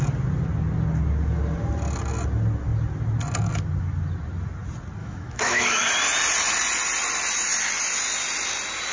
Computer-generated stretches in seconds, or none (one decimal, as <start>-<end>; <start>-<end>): 5.0-5.9